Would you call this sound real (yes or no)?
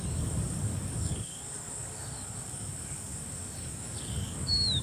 no